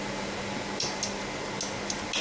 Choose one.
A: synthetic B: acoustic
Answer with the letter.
B